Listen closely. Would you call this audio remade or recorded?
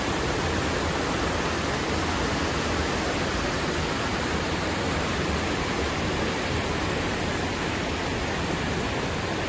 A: recorded